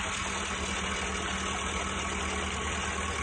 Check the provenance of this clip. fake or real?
real